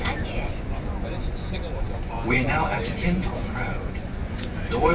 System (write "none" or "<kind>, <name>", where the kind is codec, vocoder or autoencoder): vocoder, Vocos